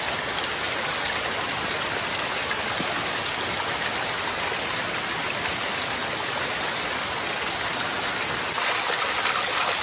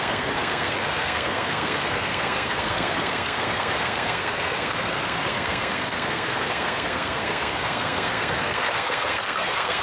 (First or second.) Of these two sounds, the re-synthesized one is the second